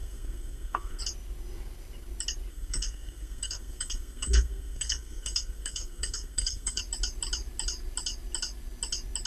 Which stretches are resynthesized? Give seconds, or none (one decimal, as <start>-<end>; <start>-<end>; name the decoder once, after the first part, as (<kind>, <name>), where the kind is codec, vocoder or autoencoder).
0.0-1.0 (codec, SNAC); 2.5-6.8